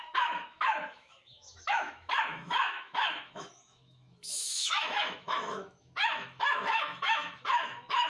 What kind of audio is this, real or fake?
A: fake